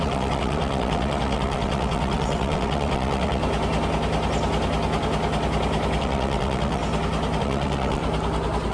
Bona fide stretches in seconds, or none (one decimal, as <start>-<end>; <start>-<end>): 3.4-6.0; 6.8-7.4; 8.0-8.7